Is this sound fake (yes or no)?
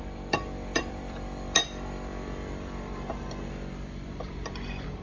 yes